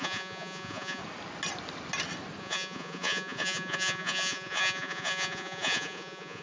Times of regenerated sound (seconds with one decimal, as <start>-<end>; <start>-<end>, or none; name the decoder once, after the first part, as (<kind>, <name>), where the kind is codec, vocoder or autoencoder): 0.0-1.0 (vocoder, Vocos); 2.4-6.4